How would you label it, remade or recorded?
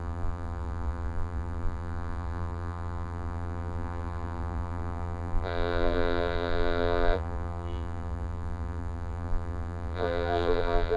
remade